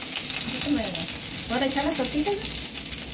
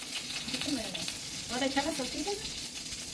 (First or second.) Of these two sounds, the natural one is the first